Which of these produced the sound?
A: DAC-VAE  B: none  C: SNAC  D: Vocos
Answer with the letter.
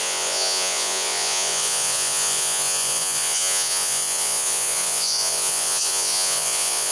D